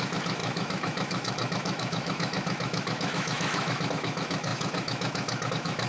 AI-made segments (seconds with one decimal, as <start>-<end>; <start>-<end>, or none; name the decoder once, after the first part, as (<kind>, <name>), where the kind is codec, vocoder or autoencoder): 0.0-5.9 (autoencoder, DAC-VAE)